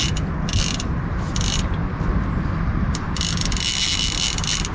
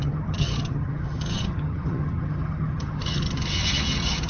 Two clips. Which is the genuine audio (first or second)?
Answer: first